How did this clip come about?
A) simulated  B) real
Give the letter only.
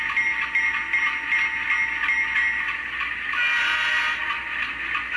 B